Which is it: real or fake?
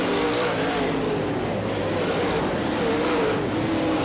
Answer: real